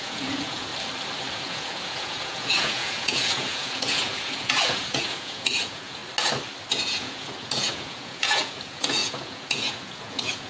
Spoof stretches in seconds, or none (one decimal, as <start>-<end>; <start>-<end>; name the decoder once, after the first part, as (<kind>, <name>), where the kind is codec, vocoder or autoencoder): 0.0-0.7 (vocoder, Vocos); 1.3-6.0; 6.7-10.5